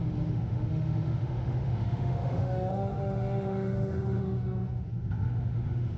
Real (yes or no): no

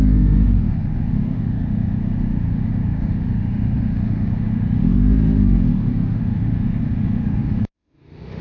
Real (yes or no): no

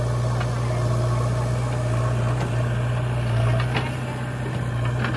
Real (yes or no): yes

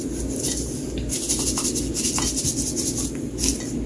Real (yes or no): yes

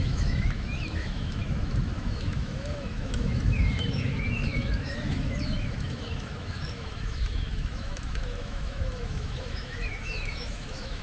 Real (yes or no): no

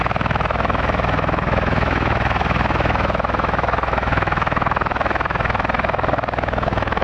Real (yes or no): no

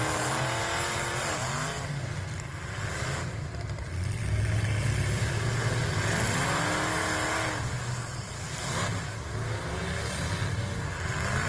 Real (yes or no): yes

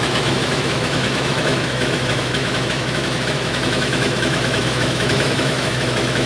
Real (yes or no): no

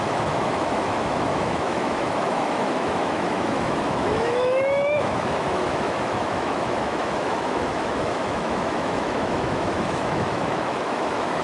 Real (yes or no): no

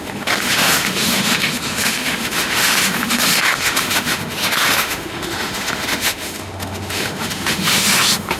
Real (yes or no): no